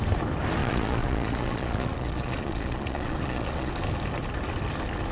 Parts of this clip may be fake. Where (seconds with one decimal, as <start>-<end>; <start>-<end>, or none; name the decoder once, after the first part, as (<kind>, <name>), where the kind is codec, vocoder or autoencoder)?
0.6-3.7 (vocoder, Vocos)